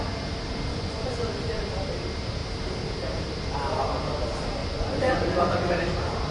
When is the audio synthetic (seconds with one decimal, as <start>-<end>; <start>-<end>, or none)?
0.7-1.6; 4.6-5.7